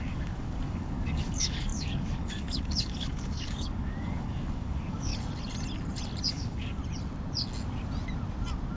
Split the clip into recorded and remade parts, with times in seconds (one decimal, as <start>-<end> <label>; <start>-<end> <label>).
0.0-5.1 remade; 5.1-6.3 recorded; 6.3-6.8 remade; 6.8-8.8 recorded